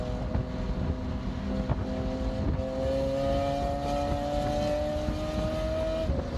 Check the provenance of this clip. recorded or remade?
recorded